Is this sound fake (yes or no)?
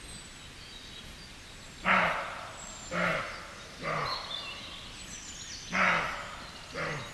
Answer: no